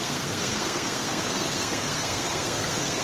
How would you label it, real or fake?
fake